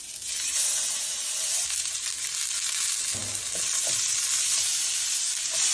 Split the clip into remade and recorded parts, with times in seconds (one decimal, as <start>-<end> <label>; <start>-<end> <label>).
0.0-5.7 recorded